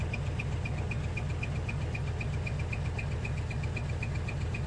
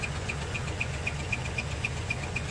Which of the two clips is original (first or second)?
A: first